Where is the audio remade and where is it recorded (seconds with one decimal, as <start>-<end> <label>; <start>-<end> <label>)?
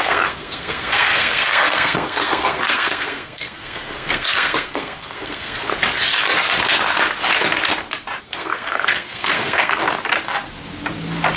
0.0-5.7 remade; 5.7-8.2 recorded; 8.2-9.8 remade; 9.8-11.4 recorded